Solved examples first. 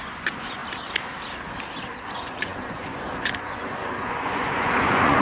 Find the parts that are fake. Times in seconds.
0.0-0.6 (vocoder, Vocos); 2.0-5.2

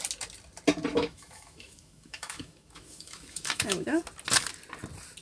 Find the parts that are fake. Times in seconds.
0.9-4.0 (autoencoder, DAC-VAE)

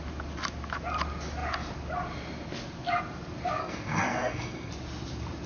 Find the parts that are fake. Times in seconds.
3.6-4.7 (codec, SNAC)